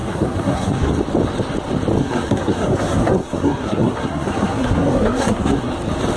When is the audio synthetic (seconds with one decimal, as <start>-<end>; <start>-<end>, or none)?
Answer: 0.0-0.9; 2.0-5.7

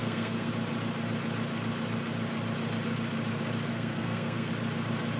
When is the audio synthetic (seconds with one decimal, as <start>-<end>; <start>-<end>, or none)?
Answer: 0.0-0.5; 3.7-4.5

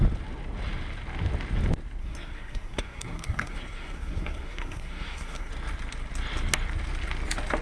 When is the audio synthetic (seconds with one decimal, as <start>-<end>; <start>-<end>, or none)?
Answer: 2.0-5.5